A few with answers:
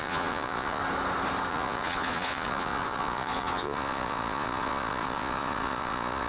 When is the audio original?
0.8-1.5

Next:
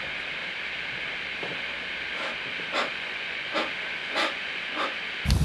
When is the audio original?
0.0-2.9; 3.5-4.0; 5.0-5.4

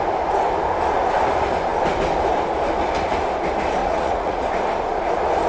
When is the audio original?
0.0-3.8; 4.4-5.5

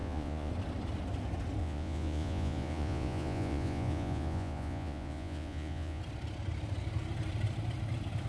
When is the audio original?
0.5-1.6; 6.0-8.3

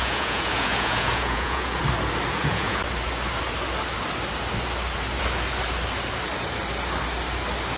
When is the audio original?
1.8-2.3; 2.8-7.8

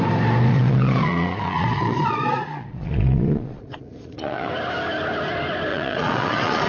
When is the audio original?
0.0-0.5; 4.5-5.7